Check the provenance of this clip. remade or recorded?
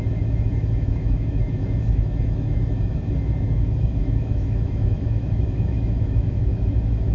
remade